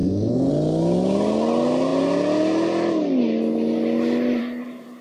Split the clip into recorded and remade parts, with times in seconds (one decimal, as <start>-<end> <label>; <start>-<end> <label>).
0.0-0.5 remade; 0.5-5.0 recorded